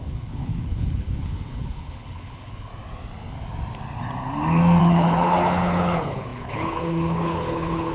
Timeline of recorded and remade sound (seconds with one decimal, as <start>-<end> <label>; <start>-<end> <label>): 0.0-2.7 remade; 2.7-4.8 recorded; 4.8-7.9 remade

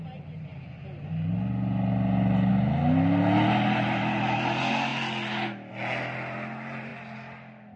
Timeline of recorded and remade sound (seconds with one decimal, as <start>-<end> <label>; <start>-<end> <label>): 0.0-7.8 recorded

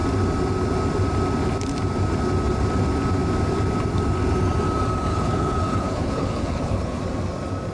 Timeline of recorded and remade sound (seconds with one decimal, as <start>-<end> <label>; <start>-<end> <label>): 0.0-5.1 recorded; 5.1-7.0 remade; 7.0-7.7 recorded

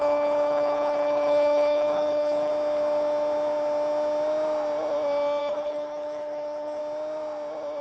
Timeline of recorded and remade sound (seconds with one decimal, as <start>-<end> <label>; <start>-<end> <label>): 0.0-2.5 remade; 2.5-5.4 recorded; 5.4-6.8 remade; 6.8-7.8 recorded